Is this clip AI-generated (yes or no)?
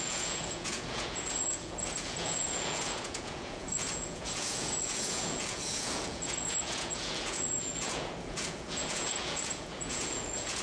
yes